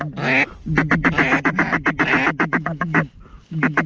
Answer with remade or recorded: recorded